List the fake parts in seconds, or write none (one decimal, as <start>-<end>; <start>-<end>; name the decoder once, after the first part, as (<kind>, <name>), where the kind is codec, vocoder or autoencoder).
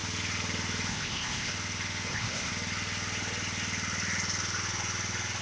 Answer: 0.9-1.5 (codec, ZipCodec); 2.1-2.5